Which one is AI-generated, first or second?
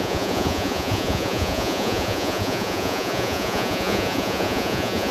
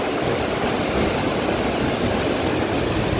first